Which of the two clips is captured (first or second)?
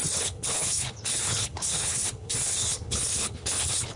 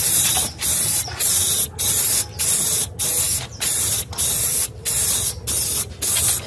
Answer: second